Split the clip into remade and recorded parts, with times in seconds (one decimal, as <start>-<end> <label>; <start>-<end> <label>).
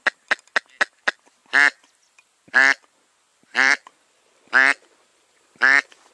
0.0-1.4 recorded; 1.4-2.8 remade; 2.8-3.3 recorded; 3.3-3.9 remade; 3.9-5.1 recorded; 5.1-6.1 remade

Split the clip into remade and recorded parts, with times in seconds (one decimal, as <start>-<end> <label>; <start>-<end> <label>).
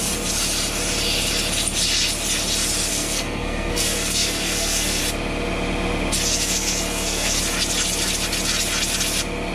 0.0-2.9 recorded; 2.9-5.0 remade; 5.0-6.3 recorded; 6.3-7.4 remade; 7.4-9.5 recorded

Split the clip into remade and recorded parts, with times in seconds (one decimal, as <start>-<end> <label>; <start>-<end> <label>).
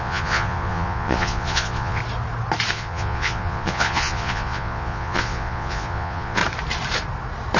0.0-2.0 remade; 2.0-2.7 recorded; 2.7-6.4 remade; 6.4-7.6 recorded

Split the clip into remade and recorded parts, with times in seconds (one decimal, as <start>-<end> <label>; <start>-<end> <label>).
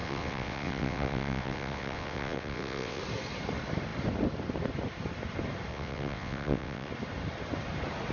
0.0-3.0 remade; 3.0-5.7 recorded; 5.7-6.9 remade; 6.9-8.1 recorded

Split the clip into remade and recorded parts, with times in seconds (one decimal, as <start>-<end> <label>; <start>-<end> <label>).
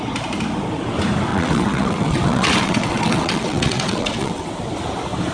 0.0-1.3 recorded; 1.3-4.5 remade; 4.5-5.3 recorded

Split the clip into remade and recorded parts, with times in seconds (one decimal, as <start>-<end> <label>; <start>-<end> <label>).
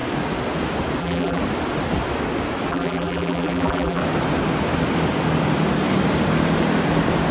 0.0-1.0 recorded; 1.0-1.4 remade; 1.4-2.7 recorded; 2.7-4.0 remade; 4.0-7.3 recorded